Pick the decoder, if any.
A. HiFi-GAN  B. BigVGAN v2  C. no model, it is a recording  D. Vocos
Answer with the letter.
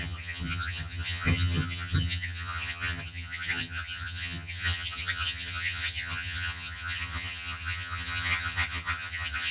A